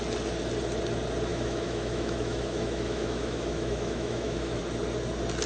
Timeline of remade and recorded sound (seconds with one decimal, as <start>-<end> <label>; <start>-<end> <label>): 0.0-1.3 recorded; 1.3-4.6 remade; 4.6-5.5 recorded